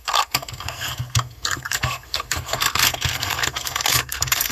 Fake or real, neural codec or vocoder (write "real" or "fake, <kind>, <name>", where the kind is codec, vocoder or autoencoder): fake, codec, SNAC